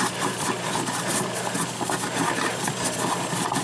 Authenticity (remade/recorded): recorded